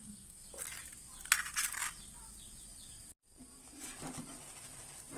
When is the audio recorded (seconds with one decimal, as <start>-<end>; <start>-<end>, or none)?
0.5-5.2